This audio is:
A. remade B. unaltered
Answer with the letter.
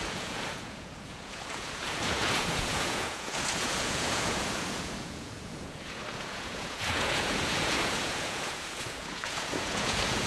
A